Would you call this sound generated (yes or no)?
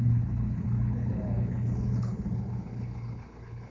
yes